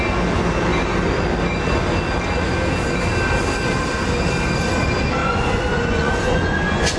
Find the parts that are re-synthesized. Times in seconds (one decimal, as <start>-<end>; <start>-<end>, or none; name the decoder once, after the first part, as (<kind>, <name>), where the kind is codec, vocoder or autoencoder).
5.2-7.0 (vocoder, Vocos)

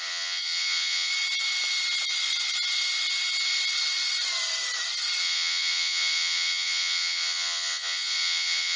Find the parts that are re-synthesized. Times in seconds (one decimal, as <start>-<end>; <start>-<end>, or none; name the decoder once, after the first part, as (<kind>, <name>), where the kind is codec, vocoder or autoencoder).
0.0-1.1 (vocoder, Vocos); 5.2-8.8

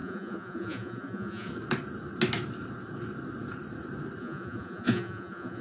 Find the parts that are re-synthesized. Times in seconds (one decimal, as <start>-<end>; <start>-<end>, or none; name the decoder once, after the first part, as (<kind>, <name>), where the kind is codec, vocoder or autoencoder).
0.0-1.5 (vocoder, Vocos); 4.2-5.6

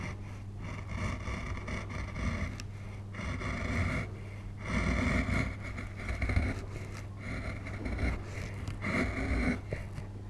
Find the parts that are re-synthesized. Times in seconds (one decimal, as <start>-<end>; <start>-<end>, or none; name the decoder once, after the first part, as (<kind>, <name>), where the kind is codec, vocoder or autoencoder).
none

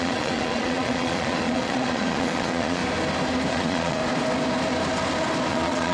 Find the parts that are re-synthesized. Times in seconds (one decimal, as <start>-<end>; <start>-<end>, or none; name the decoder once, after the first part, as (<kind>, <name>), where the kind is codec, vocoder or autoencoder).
0.0-2.8 (vocoder, Vocos); 3.5-4.0; 5.5-5.9

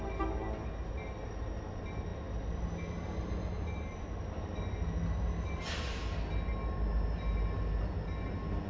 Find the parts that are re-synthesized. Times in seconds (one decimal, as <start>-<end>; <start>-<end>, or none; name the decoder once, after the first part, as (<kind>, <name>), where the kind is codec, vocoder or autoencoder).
none